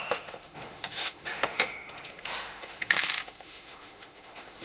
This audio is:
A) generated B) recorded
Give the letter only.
A